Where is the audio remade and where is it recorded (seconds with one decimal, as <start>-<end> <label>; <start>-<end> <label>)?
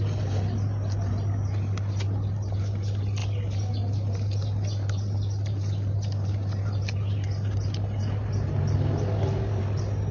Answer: 0.0-10.1 recorded